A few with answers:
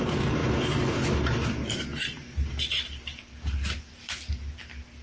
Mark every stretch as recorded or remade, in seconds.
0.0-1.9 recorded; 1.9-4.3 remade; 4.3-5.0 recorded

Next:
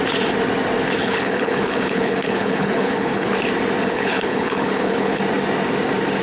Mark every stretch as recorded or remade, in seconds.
0.0-1.0 recorded; 1.0-3.3 remade; 3.3-3.8 recorded; 3.8-5.2 remade; 5.2-6.2 recorded

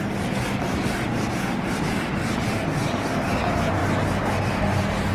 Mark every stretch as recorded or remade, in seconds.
0.0-5.1 recorded

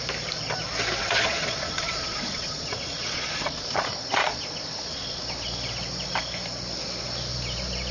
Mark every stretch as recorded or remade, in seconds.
0.0-1.0 recorded; 1.0-5.2 remade; 5.2-7.9 recorded

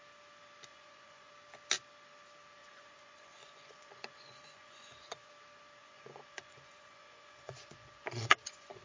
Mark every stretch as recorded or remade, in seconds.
0.0-0.7 recorded; 0.7-1.3 remade; 1.3-2.6 recorded; 2.6-5.3 remade; 5.3-5.8 recorded; 5.8-8.8 remade

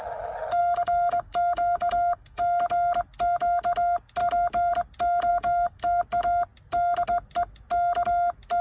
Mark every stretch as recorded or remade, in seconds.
0.0-0.6 recorded; 0.6-2.6 remade; 2.6-5.3 recorded; 5.3-6.0 remade; 6.0-8.6 recorded

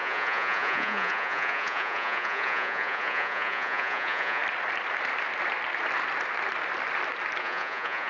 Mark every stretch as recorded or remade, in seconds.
0.0-4.4 remade; 4.4-7.4 recorded; 7.4-8.1 remade